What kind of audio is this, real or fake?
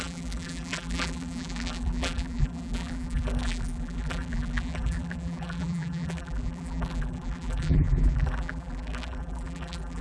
fake